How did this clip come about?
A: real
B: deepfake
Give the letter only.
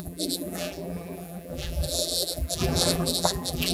B